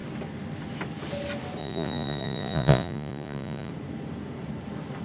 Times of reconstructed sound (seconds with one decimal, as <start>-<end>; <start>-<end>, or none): 1.6-3.7